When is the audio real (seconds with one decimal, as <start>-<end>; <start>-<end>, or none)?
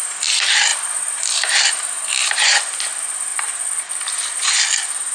0.0-5.1